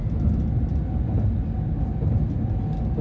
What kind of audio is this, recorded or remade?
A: recorded